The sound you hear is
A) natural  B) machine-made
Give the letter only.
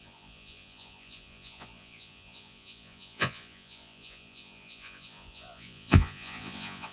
B